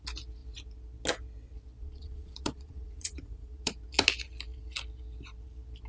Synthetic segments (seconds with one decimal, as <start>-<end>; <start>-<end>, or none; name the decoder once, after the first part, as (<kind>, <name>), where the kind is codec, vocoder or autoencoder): 1.8-3.7 (vocoder, Vocos)